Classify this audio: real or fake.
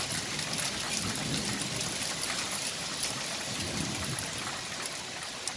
real